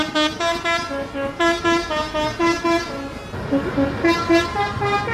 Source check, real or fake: real